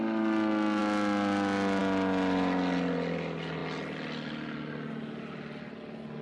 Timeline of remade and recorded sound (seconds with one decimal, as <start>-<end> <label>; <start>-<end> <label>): 0.0-6.2 recorded

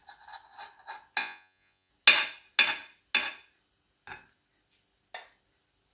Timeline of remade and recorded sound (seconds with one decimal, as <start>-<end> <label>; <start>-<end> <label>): 0.0-1.2 recorded; 1.2-1.9 remade; 1.9-5.9 recorded

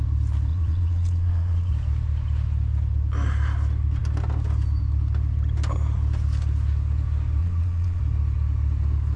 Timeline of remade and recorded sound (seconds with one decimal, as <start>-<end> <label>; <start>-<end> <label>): 0.0-0.5 recorded; 0.5-1.7 remade; 1.7-7.4 recorded; 7.4-8.0 remade; 8.0-9.2 recorded

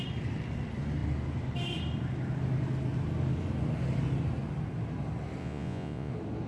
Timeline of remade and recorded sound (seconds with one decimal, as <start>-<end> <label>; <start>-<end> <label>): 0.0-5.4 recorded; 5.4-6.1 remade; 6.1-6.5 recorded